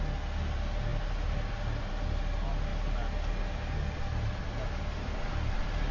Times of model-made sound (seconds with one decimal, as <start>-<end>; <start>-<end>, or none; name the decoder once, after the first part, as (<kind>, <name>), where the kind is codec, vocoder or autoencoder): none